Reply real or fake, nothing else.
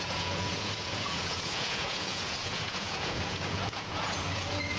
fake